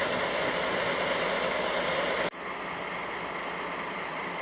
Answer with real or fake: real